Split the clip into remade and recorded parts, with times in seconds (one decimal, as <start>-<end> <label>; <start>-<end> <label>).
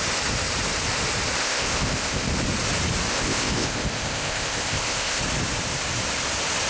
0.0-1.4 recorded; 1.4-2.3 remade; 2.3-3.1 recorded; 3.1-5.2 remade; 5.2-6.7 recorded